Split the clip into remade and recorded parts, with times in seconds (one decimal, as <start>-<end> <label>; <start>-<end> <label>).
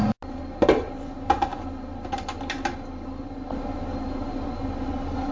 0.0-5.3 recorded